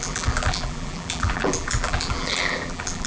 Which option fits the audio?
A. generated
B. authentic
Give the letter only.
A